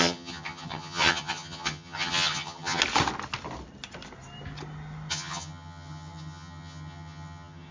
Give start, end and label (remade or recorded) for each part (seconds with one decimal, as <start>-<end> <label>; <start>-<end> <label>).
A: 0.0-2.8 remade; 2.8-5.1 recorded; 5.1-7.7 remade